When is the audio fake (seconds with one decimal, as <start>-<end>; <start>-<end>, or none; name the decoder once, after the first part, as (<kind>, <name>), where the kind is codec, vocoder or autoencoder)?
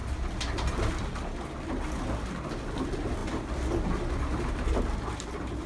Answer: none